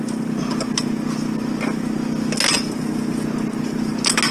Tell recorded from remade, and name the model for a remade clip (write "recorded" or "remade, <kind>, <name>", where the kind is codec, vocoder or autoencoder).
recorded